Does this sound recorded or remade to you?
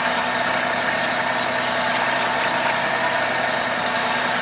recorded